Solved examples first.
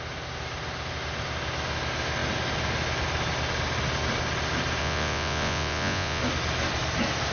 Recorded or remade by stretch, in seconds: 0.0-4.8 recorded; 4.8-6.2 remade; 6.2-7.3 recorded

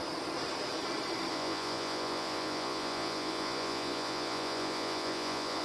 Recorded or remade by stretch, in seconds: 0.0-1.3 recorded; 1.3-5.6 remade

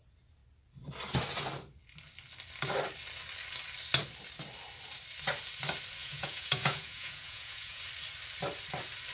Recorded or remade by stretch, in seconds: 0.0-6.0 recorded; 6.0-7.8 remade; 7.8-9.1 recorded

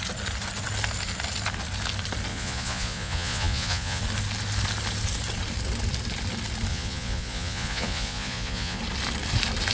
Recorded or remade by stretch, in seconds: 0.0-2.3 recorded; 2.3-4.0 remade; 4.0-6.7 recorded; 6.7-8.8 remade; 8.8-9.7 recorded

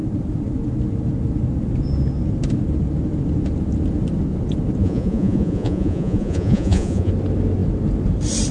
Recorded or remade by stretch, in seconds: 0.0-4.8 recorded; 4.8-7.1 remade; 7.1-8.5 recorded

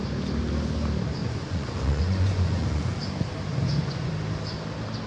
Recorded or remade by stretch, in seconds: 0.0-1.2 recorded; 1.2-3.0 remade; 3.0-3.5 recorded; 3.5-4.1 remade; 4.1-5.1 recorded

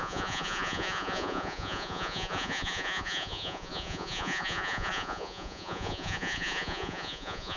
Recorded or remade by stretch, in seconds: 0.0-7.6 remade

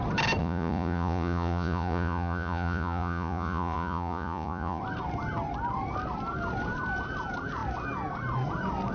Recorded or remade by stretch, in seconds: 0.0-0.4 recorded; 0.4-4.8 remade; 4.8-8.9 recorded